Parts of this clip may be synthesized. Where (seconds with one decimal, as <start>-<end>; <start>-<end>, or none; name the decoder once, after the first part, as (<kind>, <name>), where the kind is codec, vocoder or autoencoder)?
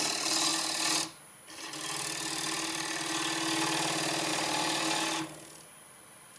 none